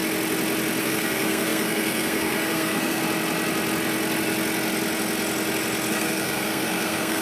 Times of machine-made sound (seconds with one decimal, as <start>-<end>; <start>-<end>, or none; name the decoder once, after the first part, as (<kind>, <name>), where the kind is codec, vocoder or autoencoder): 0.8-3.0 (codec, SNAC); 5.9-7.2